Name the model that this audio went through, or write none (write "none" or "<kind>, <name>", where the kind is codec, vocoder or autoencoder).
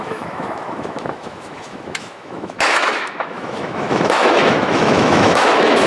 autoencoder, DAC-VAE